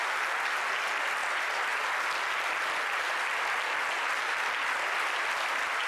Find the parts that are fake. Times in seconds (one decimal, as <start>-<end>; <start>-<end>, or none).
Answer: none